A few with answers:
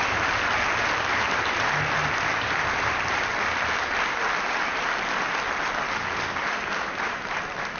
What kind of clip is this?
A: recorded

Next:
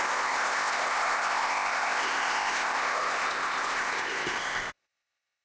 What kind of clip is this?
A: remade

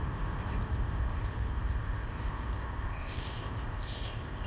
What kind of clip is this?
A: remade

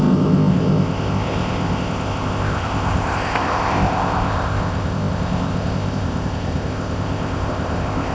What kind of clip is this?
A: remade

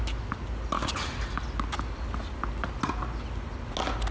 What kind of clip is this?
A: recorded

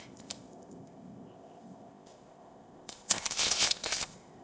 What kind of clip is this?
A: remade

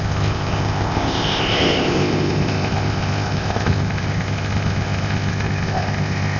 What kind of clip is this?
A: remade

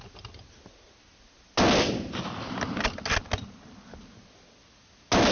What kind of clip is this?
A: recorded